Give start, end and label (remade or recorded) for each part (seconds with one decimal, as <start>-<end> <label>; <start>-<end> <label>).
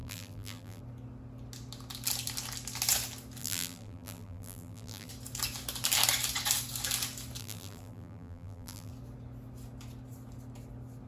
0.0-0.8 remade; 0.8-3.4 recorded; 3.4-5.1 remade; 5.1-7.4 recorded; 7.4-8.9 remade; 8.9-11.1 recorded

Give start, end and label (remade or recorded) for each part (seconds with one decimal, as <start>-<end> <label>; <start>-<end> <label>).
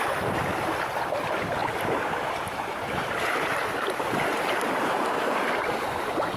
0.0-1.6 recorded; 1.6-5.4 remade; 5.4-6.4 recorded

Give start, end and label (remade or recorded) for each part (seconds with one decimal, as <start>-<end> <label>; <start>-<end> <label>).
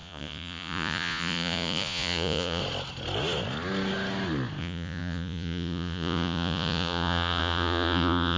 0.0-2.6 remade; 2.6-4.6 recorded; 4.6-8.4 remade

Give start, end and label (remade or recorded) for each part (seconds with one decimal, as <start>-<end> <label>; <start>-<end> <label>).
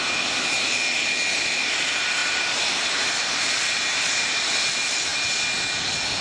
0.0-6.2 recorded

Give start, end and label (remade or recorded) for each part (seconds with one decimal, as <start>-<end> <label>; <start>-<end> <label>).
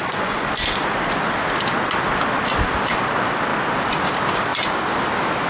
0.0-0.5 remade; 0.5-5.5 recorded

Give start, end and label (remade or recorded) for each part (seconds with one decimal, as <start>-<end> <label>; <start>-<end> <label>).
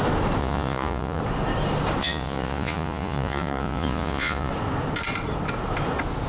0.0-0.4 recorded; 0.4-1.2 remade; 1.2-2.0 recorded; 2.0-4.5 remade; 4.5-6.3 recorded